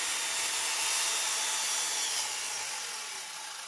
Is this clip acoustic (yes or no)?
yes